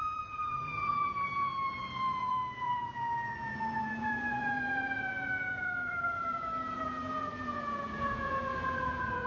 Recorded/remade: remade